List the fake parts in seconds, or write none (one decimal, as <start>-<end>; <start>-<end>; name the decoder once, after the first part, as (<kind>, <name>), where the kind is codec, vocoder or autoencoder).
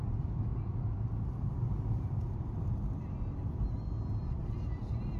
4.2-5.2 (vocoder, BigVGAN v2)